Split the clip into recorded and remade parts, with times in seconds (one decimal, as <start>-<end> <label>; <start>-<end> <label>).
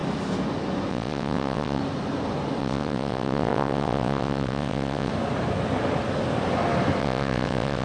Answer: 0.0-0.9 recorded; 0.9-1.8 remade; 1.8-2.6 recorded; 2.6-5.1 remade; 5.1-7.0 recorded; 7.0-7.8 remade